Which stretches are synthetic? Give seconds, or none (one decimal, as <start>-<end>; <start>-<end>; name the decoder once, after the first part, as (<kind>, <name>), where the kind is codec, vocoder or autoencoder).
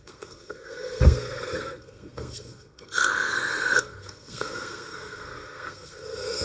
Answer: 0.0-6.4 (codec, SNAC)